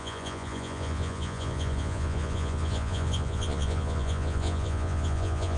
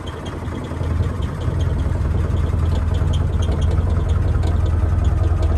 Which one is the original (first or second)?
second